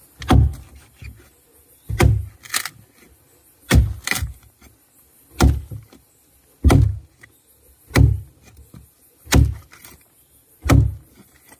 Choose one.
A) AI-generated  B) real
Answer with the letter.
B